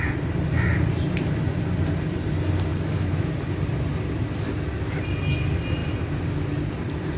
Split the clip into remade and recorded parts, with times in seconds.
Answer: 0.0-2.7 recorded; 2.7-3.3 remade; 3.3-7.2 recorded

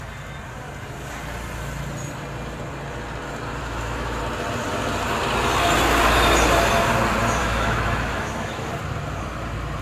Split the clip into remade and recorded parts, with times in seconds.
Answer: 0.0-3.6 recorded; 3.6-4.2 remade; 4.2-7.4 recorded; 7.4-8.7 remade; 8.7-9.8 recorded

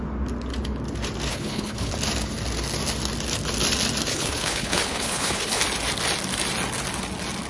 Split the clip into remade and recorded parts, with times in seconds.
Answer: 0.0-1.3 recorded; 1.3-1.9 remade; 1.9-4.1 recorded; 4.1-5.6 remade; 5.6-7.5 recorded

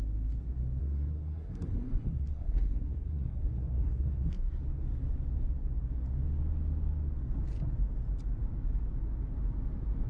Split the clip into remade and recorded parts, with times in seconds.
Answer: 0.0-0.8 recorded; 0.8-4.6 remade; 4.6-10.1 recorded